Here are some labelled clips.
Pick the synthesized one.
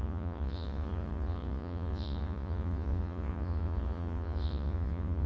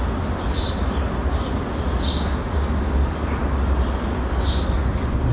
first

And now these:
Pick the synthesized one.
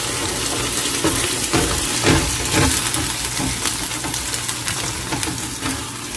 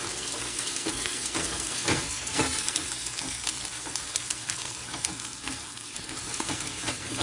second